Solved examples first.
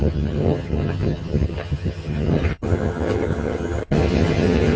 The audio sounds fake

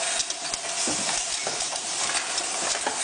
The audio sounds real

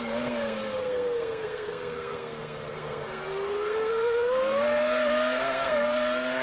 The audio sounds fake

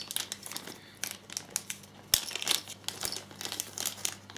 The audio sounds real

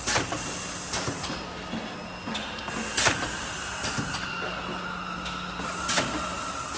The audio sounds real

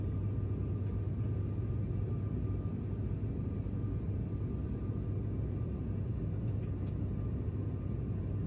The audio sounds real